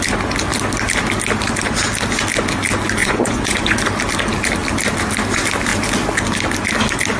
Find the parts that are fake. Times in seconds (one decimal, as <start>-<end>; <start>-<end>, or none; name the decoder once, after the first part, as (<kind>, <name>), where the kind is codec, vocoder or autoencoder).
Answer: 3.0-3.8 (vocoder, Vocos)

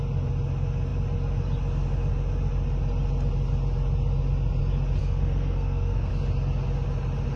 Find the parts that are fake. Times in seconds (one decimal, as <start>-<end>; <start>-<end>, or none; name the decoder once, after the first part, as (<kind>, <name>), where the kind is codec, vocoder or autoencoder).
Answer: 5.0-6.1 (codec, SNAC)

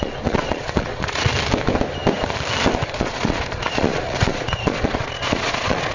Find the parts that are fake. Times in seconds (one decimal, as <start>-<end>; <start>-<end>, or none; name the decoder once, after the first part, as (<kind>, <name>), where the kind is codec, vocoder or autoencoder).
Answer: 0.0-1.3 (vocoder, Vocos); 2.9-5.9